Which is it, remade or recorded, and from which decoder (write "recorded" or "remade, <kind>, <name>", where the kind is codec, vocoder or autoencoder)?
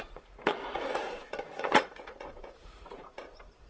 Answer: remade, vocoder, Vocos